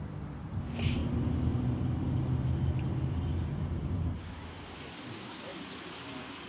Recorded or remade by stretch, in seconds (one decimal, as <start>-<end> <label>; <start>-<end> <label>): 0.0-6.5 recorded